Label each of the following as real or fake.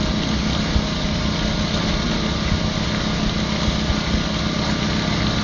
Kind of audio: real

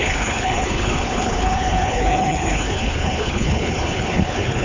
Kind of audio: fake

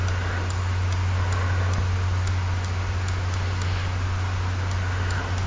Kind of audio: real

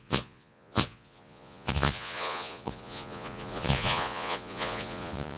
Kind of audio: fake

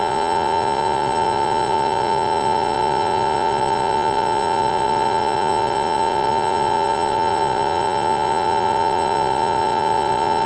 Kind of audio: fake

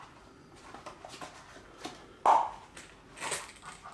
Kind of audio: real